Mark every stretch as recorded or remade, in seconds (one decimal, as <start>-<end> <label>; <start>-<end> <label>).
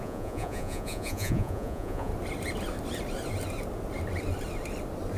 0.0-2.1 remade; 2.1-5.2 recorded